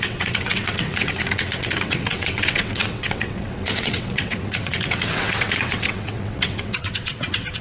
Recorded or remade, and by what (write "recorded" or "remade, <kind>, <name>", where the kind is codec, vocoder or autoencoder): remade, vocoder, WaveNeXt